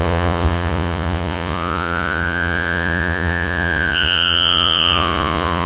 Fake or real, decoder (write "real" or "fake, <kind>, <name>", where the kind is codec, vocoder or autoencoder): fake, vocoder, Vocos